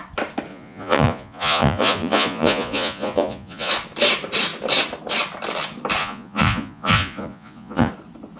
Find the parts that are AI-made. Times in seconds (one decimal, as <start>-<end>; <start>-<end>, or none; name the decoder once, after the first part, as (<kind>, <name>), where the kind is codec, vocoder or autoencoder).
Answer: 0.5-3.7 (vocoder, Vocos); 6.0-7.9